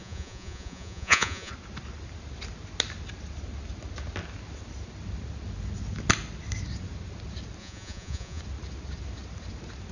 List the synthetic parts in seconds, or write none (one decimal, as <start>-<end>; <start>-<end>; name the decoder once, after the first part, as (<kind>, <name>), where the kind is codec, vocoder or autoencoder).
0.0-1.5 (vocoder, Vocos); 7.6-8.4